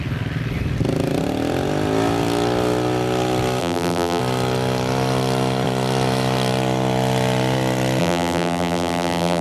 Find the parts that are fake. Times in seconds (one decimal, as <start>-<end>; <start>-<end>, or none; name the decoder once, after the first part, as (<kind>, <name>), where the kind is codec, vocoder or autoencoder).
3.6-4.2 (vocoder, BigVGAN v2); 8.0-9.4

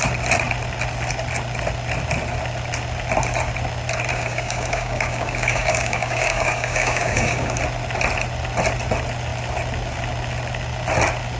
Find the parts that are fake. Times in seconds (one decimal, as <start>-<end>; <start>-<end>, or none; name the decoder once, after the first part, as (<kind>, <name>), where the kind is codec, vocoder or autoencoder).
4.1-7.6 (codec, DAC)

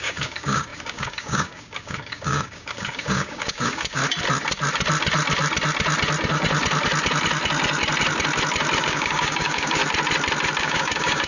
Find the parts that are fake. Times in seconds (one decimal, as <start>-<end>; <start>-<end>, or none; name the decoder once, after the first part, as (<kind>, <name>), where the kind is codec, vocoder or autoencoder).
0.0-4.0 (codec, DAC); 8.8-9.8; 10.6-11.3

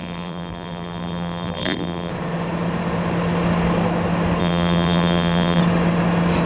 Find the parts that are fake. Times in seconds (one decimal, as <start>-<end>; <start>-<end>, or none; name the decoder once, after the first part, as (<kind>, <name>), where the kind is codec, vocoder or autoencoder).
0.0-2.1 (vocoder, BigVGAN v2); 4.4-5.6

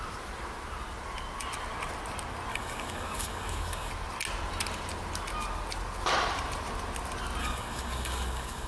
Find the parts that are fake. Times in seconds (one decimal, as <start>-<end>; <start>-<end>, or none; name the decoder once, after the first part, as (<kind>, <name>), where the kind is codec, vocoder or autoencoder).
2.5-3.9 (codec, DAC); 7.4-8.7

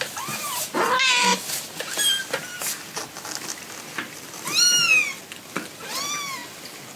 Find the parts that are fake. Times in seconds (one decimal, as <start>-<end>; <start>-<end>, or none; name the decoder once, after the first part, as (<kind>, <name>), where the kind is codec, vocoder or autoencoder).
none